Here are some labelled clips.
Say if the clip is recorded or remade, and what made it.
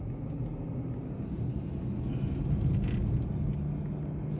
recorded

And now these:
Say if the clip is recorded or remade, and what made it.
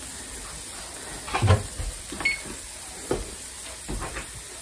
recorded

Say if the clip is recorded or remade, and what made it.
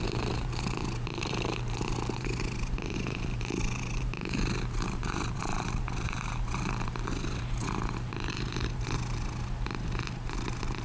remade, vocoder, BigVGAN v2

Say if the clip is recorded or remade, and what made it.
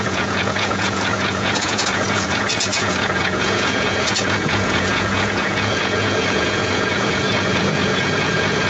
remade, vocoder, Vocos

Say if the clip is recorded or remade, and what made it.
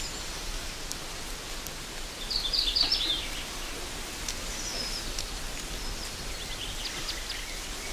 recorded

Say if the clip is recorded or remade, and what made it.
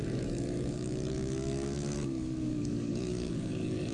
remade, codec, DAC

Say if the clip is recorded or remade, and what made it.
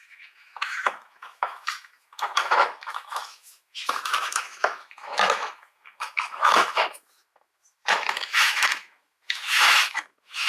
remade, autoencoder, DAC-VAE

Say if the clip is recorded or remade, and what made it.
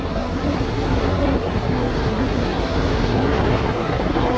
remade, codec, SNAC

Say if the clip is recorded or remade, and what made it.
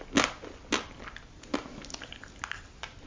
recorded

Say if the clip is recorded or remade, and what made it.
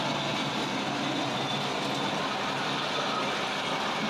recorded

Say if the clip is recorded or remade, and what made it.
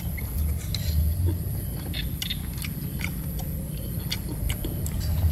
recorded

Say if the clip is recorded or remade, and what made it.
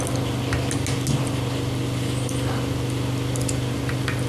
recorded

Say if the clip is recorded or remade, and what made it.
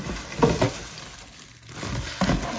recorded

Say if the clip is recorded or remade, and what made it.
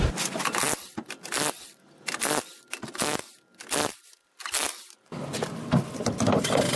recorded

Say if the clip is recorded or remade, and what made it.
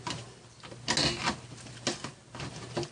recorded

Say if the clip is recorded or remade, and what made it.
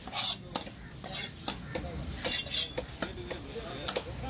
recorded